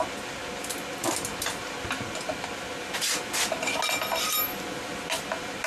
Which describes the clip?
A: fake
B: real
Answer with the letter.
B